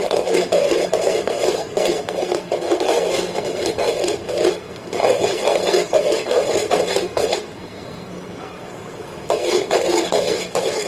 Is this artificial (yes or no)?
yes